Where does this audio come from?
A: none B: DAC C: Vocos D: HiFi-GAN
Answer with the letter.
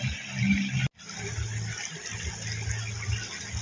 A